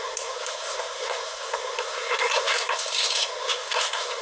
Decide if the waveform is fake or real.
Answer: fake